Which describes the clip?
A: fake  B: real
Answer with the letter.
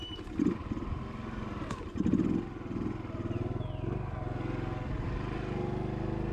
B